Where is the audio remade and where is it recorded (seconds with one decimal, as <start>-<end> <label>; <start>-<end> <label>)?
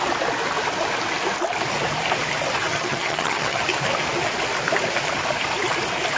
0.0-2.7 recorded; 2.7-3.6 remade; 3.6-6.2 recorded